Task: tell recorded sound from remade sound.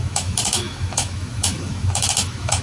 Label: remade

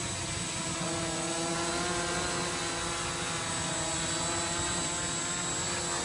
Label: recorded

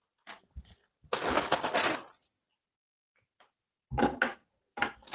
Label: recorded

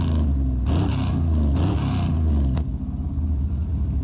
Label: recorded